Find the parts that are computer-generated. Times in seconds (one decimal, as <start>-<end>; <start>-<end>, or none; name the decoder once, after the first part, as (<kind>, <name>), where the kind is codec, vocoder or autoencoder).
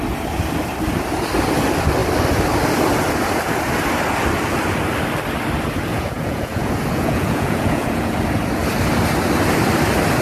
5.9-8.2 (vocoder, Vocos)